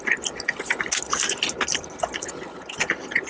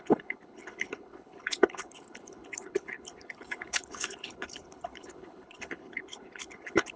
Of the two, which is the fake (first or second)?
second